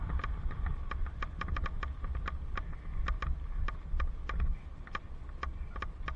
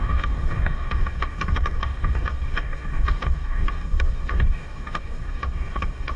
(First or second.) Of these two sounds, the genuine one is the first